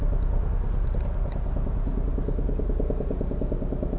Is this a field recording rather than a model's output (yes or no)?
yes